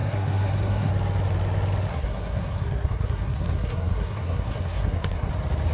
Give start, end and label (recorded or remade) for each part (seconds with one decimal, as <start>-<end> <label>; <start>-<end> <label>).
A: 0.0-0.9 remade; 0.9-1.9 recorded; 1.9-5.3 remade; 5.3-5.7 recorded